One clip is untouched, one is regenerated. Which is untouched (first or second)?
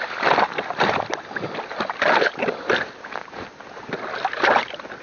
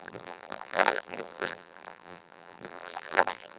first